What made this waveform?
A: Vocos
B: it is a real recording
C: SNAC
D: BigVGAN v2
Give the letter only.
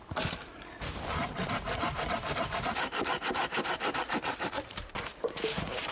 D